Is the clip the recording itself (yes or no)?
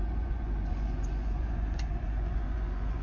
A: no